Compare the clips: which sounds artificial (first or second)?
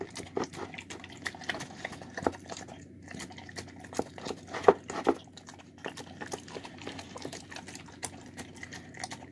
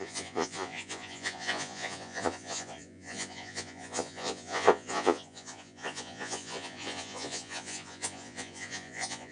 second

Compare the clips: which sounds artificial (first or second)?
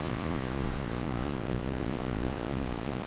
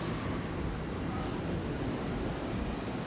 first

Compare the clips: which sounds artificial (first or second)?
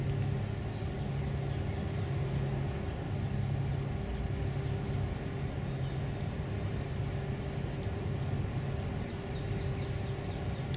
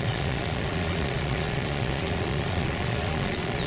second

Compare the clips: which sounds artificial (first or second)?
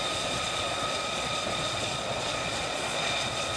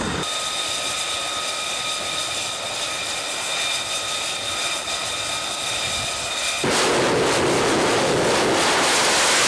first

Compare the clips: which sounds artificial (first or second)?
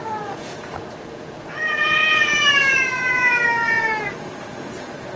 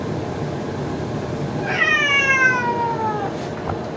first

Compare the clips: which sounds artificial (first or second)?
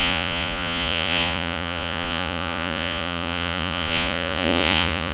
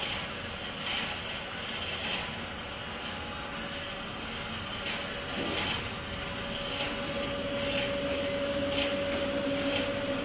first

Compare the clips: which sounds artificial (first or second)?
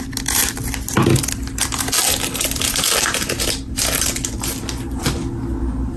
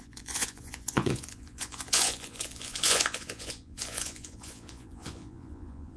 second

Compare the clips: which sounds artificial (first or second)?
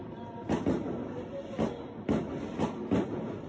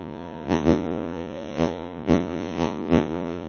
second